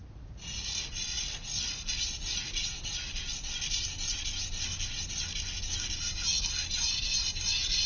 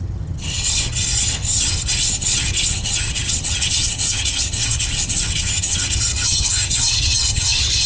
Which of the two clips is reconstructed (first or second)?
second